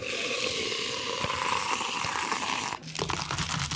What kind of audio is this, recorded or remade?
recorded